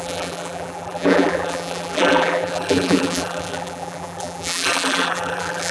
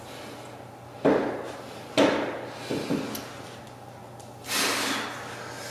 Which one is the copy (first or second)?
first